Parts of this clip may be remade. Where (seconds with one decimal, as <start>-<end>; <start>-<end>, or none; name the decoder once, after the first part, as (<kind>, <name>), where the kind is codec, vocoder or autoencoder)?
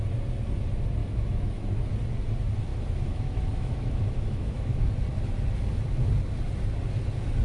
1.0-1.9 (autoencoder, DAC-VAE); 2.7-4.9